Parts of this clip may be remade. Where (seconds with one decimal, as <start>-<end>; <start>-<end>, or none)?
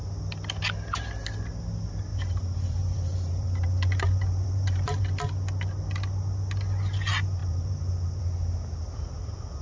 2.1-5.0; 7.4-8.2